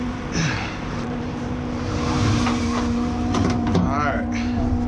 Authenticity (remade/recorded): remade